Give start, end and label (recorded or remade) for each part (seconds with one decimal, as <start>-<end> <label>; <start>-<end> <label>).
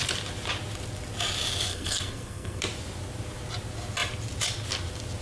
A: 0.0-1.7 recorded; 1.7-2.6 remade; 2.6-5.2 recorded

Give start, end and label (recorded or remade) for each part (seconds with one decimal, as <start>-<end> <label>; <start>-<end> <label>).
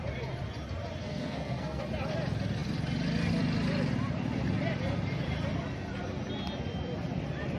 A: 0.0-1.0 recorded; 1.0-1.8 remade; 1.8-7.6 recorded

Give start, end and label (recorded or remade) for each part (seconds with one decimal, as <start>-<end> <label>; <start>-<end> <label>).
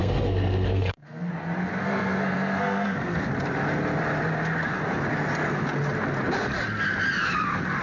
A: 0.0-1.3 remade; 1.3-1.8 recorded; 1.8-3.3 remade; 3.3-7.8 recorded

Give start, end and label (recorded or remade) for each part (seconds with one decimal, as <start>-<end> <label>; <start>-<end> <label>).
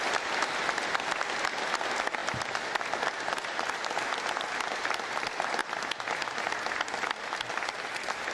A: 0.0-8.3 recorded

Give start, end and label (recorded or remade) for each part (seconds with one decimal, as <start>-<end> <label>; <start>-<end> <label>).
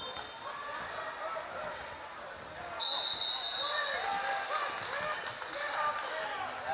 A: 0.0-6.7 recorded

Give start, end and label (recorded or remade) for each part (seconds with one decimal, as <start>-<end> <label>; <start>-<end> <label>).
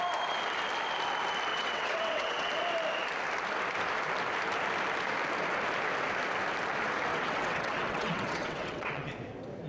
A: 0.0-1.5 recorded; 1.5-2.5 remade; 2.5-7.1 recorded; 7.1-9.1 remade; 9.1-9.7 recorded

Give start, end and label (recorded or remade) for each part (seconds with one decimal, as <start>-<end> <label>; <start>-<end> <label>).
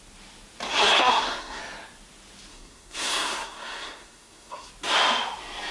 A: 0.0-0.7 recorded; 0.7-1.6 remade; 1.6-2.5 recorded; 2.5-4.7 remade; 4.7-5.7 recorded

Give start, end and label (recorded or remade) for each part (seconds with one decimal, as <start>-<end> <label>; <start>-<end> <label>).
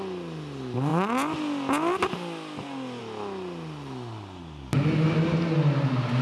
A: 0.0-6.2 recorded